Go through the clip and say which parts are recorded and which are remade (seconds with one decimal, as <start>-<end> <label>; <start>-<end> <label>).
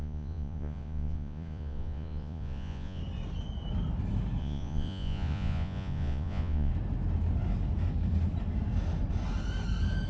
0.0-3.0 remade; 3.0-4.4 recorded; 4.4-6.7 remade; 6.7-10.1 recorded